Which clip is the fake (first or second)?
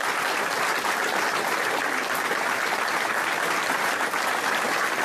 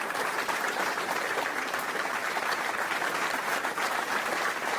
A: second